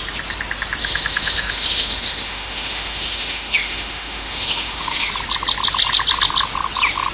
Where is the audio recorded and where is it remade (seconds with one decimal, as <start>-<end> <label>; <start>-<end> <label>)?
0.0-0.8 recorded; 0.8-5.1 remade; 5.1-7.1 recorded